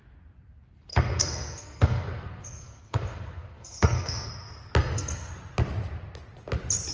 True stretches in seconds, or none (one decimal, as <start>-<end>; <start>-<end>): 0.0-0.9; 4.3-4.8; 5.3-6.9